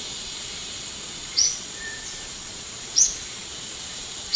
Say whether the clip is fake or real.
fake